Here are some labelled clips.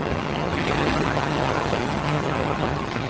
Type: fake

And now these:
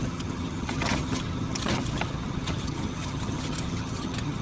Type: fake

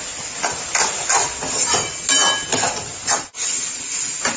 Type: real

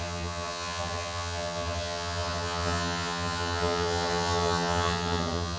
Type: fake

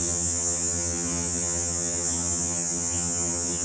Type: fake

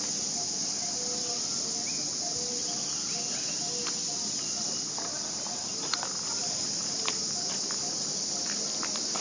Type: real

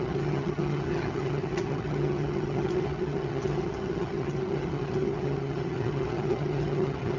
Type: fake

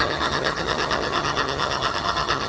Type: fake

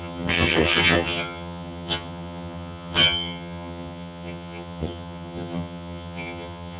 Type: fake